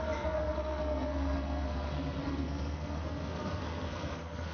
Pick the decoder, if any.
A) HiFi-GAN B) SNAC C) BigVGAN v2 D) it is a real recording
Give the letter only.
B